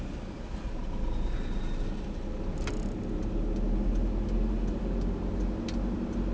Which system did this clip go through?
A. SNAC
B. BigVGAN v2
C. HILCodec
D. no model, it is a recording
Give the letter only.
D